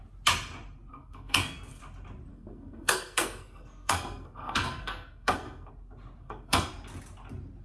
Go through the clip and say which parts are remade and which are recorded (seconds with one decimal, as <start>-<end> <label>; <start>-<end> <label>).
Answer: 0.0-0.9 recorded; 0.9-1.8 remade; 1.8-2.3 recorded; 2.3-5.7 remade; 5.7-6.2 recorded; 6.2-6.7 remade; 6.7-7.6 recorded